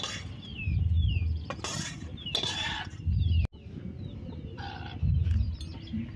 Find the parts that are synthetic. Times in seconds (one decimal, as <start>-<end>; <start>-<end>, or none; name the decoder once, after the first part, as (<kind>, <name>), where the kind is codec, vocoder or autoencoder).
none